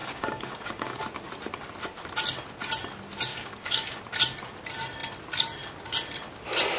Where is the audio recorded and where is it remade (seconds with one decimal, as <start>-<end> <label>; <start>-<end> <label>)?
0.0-1.0 remade; 1.0-3.3 recorded; 3.3-4.0 remade; 4.0-6.8 recorded